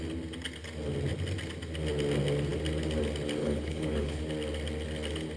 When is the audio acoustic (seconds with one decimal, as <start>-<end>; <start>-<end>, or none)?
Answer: 0.0-3.4; 4.2-5.4

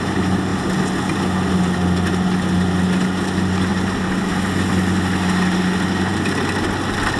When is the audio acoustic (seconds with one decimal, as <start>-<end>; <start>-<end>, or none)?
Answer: 0.0-7.2